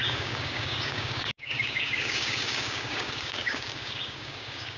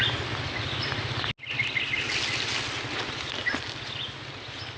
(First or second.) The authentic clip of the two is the second